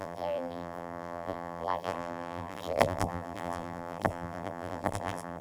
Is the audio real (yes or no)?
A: no